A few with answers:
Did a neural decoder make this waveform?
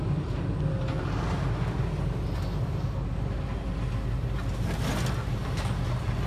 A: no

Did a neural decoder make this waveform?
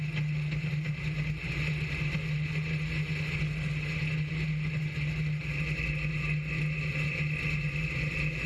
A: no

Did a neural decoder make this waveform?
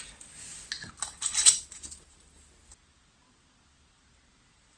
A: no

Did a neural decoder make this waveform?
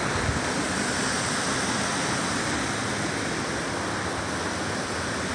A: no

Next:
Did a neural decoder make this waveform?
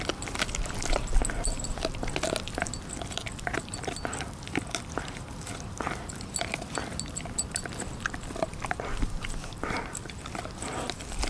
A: no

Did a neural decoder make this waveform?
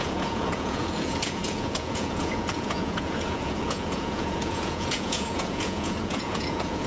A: yes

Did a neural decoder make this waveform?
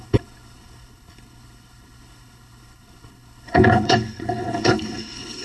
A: yes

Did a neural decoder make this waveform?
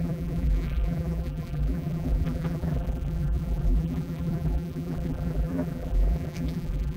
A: yes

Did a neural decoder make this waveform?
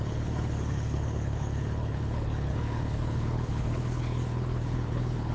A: yes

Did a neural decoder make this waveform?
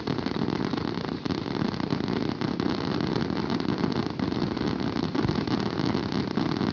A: no